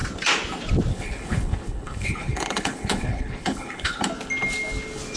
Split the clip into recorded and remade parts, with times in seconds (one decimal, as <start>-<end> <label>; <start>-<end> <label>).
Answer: 0.0-0.9 recorded; 0.9-4.0 remade; 4.0-5.2 recorded